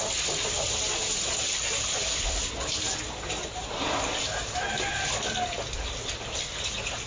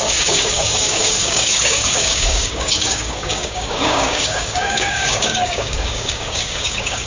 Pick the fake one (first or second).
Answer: second